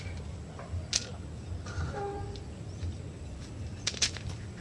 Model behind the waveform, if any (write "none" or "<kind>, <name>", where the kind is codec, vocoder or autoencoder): none